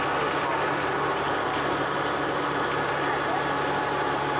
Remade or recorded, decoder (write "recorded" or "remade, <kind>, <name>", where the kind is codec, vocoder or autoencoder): recorded